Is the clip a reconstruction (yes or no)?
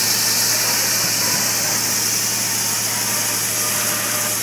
no